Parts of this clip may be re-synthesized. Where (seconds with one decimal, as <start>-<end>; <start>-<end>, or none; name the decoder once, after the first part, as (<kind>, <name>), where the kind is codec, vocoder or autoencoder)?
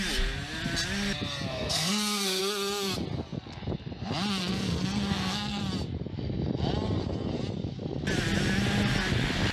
1.5-2.4 (codec, SNAC); 4.4-5.6